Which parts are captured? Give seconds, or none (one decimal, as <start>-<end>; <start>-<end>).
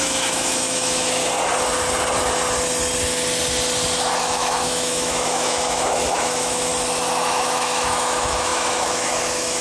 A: 1.2-4.2; 6.7-7.2